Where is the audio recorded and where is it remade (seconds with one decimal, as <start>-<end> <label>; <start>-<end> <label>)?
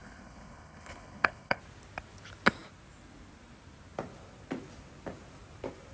0.0-1.6 remade; 1.6-5.9 recorded